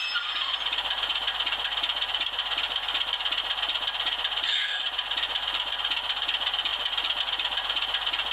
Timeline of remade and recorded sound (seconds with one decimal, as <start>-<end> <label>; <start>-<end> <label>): 0.0-8.3 recorded